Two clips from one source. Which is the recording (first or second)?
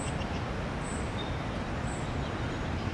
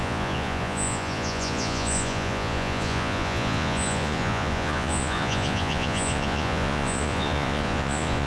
first